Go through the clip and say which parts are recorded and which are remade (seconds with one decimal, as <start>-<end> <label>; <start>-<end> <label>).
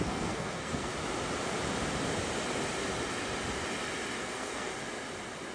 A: 0.0-0.9 remade; 0.9-4.2 recorded; 4.2-4.7 remade; 4.7-5.5 recorded